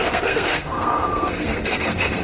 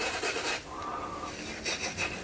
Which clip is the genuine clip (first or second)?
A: second